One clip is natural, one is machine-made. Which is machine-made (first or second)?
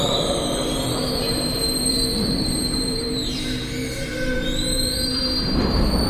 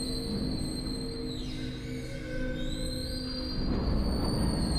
first